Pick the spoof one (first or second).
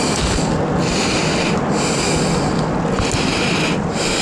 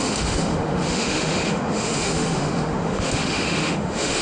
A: second